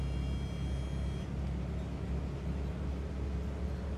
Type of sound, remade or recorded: recorded